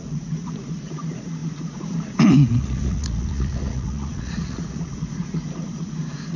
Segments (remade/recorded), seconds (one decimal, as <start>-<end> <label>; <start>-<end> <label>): 0.0-6.4 remade